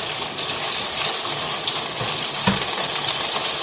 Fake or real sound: real